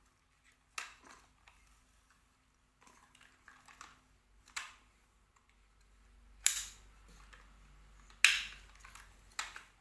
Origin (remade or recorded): recorded